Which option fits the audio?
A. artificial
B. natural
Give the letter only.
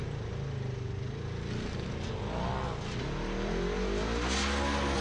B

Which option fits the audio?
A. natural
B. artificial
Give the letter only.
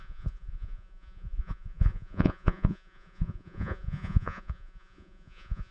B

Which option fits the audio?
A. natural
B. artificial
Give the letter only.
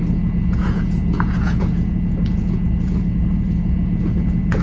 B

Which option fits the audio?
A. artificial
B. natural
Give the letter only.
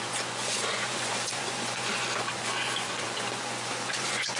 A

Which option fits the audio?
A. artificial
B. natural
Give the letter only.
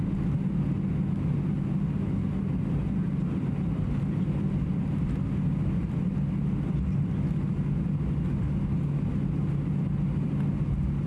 B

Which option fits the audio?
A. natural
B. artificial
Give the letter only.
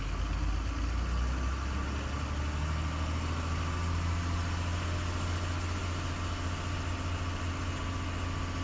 A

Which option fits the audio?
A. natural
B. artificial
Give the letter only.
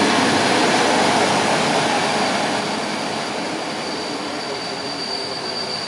A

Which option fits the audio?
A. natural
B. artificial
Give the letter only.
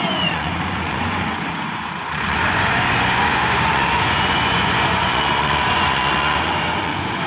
B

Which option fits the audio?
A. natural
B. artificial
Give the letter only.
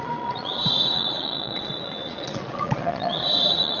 B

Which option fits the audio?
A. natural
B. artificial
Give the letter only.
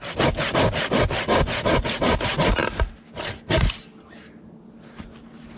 A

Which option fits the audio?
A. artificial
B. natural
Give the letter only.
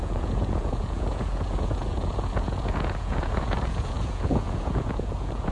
A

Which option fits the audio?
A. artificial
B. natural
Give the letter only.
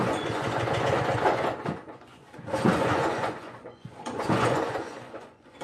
A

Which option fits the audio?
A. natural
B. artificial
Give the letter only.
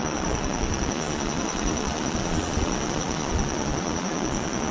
B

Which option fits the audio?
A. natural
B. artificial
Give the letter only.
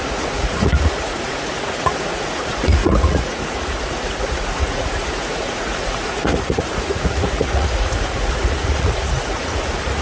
B